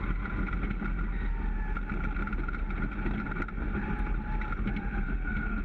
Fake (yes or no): no